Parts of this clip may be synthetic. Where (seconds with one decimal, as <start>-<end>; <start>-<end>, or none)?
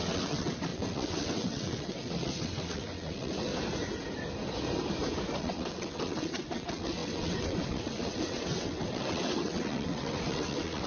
0.0-3.5; 5.4-10.9